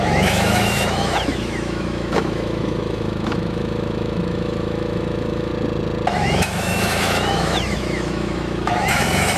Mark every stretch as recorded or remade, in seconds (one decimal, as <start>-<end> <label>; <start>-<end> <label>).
0.0-5.5 remade; 5.5-6.1 recorded; 6.1-9.4 remade